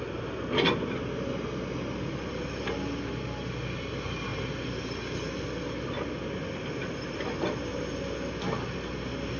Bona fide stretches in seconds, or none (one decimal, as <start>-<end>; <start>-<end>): 0.0-9.4